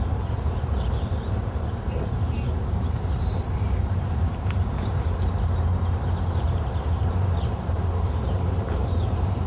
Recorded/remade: remade